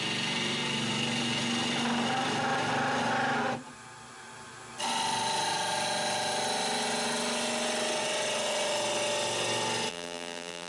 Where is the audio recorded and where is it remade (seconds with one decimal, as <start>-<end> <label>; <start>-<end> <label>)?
0.0-9.9 recorded; 9.9-10.7 remade